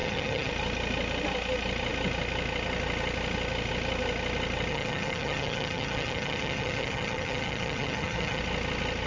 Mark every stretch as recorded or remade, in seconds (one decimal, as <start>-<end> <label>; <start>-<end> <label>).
0.0-0.5 remade; 0.5-4.7 recorded; 4.7-8.4 remade; 8.4-9.1 recorded